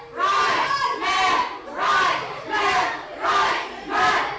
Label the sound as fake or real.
real